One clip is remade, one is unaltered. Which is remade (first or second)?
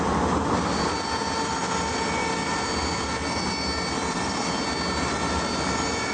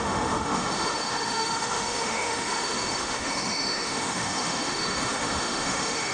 second